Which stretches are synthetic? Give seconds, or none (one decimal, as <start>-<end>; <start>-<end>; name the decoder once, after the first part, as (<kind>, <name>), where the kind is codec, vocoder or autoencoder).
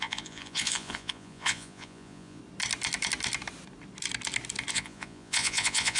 0.0-2.4 (vocoder, Vocos); 4.7-6.0